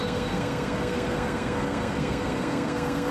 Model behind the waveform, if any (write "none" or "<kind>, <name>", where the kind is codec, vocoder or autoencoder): codec, SNAC